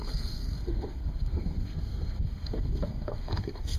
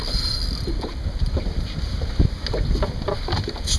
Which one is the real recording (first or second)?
second